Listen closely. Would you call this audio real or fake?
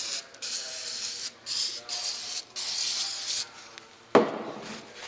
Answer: real